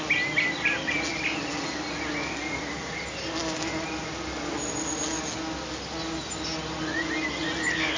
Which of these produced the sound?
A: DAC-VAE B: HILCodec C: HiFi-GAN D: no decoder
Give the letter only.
D